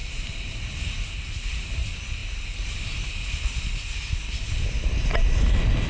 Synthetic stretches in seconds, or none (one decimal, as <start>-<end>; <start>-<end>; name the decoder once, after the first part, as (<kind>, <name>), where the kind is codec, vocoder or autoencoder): 0.0-0.7 (vocoder, BigVGAN v2)